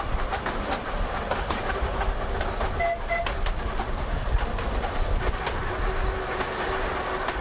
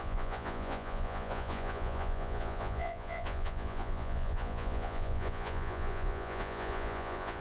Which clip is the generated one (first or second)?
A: second